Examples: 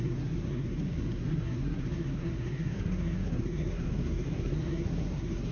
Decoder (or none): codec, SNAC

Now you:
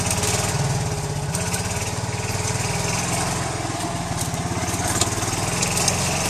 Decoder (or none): none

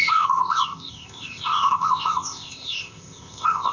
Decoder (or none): codec, ZipCodec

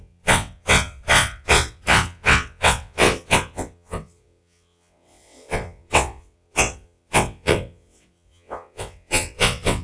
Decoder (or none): vocoder, WaveNeXt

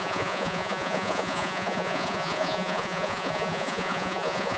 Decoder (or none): vocoder, Vocos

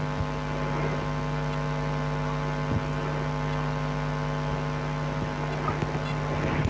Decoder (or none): none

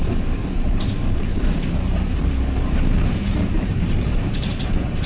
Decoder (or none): vocoder, BigVGAN v2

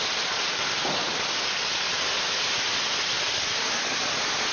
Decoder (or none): none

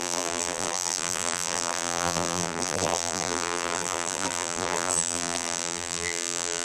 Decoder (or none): vocoder, BigVGAN v2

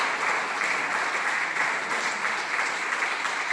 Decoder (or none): none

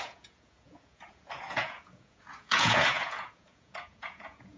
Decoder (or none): vocoder, Vocos